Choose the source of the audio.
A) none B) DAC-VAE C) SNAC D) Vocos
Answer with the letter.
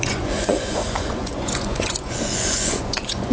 D